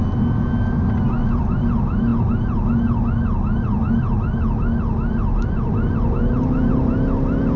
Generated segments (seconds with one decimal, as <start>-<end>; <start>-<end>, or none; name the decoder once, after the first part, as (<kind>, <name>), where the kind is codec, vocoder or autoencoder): none